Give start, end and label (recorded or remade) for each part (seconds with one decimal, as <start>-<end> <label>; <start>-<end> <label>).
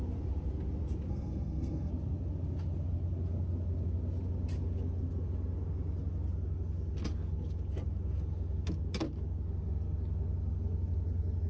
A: 0.0-1.1 recorded; 1.1-1.9 remade; 1.9-11.5 recorded